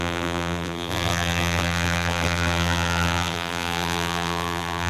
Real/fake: fake